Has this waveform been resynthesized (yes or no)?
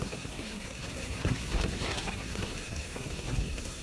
yes